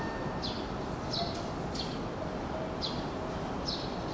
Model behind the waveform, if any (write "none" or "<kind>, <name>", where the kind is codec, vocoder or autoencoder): none